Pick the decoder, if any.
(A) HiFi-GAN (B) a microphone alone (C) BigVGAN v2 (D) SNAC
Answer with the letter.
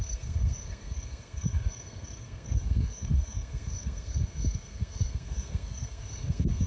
D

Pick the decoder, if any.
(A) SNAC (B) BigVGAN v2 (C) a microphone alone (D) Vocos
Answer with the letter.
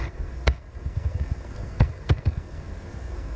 A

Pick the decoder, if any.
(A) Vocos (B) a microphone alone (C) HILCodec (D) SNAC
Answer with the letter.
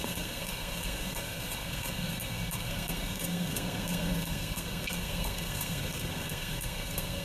D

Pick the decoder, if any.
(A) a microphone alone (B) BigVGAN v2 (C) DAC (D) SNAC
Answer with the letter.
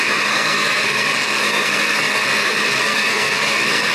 D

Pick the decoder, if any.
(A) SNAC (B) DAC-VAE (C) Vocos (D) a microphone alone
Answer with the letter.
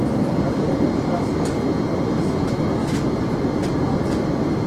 D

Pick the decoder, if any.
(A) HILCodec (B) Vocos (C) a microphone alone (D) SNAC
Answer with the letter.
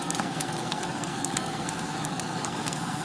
D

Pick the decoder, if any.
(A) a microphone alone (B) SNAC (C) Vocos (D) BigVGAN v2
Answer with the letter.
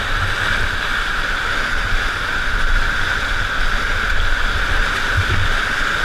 A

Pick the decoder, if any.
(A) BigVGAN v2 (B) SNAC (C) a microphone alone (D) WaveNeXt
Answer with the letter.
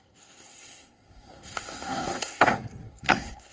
B